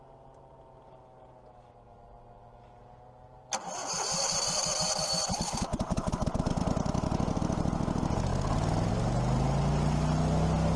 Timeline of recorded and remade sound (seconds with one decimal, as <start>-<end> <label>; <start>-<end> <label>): 0.0-10.8 recorded